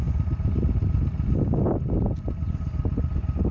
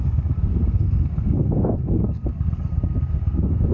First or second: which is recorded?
first